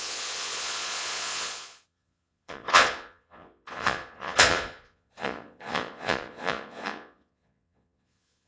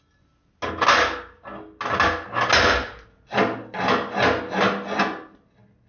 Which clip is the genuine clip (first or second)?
second